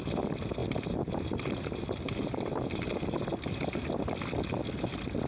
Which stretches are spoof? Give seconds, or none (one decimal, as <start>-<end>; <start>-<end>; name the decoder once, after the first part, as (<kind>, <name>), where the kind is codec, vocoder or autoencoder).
0.6-3.8 (vocoder, BigVGAN v2)

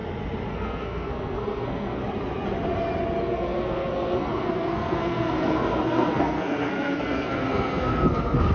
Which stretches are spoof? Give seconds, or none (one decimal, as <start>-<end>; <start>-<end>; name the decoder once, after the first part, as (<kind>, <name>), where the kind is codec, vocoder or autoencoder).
0.5-2.0 (codec, SNAC); 3.2-8.5